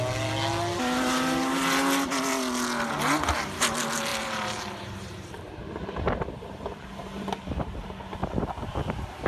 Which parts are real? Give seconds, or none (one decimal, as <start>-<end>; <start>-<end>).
0.0-4.1; 5.6-8.2; 8.8-9.3